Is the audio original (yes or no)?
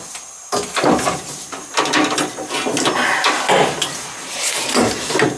yes